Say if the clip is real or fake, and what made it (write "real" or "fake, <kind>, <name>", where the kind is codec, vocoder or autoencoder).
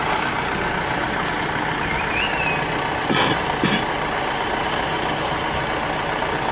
real